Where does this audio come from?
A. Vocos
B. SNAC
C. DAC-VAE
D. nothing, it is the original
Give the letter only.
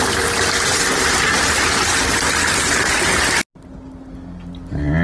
D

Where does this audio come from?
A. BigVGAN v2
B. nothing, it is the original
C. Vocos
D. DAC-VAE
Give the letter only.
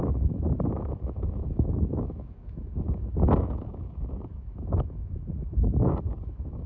D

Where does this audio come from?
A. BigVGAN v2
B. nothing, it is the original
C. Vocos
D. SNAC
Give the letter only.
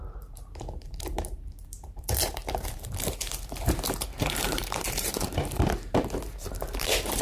A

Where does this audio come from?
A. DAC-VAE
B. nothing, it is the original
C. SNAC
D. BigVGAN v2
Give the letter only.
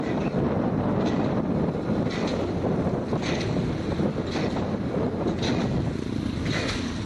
B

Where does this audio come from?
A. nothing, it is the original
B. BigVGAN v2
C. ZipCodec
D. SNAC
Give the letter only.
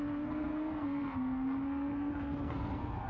D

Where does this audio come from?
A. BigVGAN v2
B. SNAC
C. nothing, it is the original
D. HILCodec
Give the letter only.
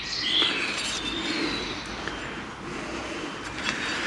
C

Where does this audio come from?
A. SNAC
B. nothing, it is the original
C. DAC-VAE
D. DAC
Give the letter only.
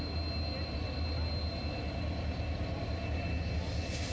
B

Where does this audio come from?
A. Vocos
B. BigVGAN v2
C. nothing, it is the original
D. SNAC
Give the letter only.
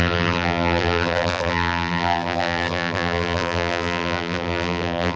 B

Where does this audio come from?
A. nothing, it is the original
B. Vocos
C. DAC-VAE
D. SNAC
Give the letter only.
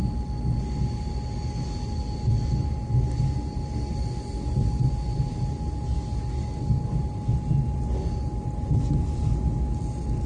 A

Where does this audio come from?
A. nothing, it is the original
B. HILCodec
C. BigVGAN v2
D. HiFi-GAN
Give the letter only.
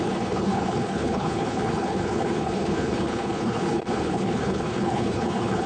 B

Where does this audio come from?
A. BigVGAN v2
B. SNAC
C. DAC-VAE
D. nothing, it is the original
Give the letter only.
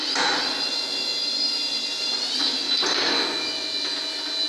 D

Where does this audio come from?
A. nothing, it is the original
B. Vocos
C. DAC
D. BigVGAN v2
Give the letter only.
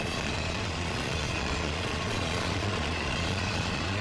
B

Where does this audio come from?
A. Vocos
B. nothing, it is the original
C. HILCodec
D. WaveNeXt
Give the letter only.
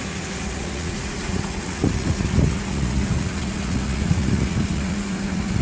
A